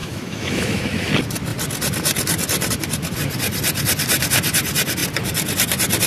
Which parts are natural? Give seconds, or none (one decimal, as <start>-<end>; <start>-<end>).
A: 1.1-6.1